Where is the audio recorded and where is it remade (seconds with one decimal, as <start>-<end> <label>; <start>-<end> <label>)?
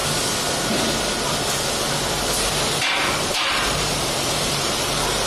0.0-3.2 recorded; 3.2-5.3 remade